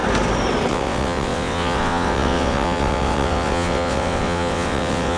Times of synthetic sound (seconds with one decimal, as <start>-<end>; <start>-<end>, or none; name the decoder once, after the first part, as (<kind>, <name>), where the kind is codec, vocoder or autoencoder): 0.7-5.2 (vocoder, WaveNeXt)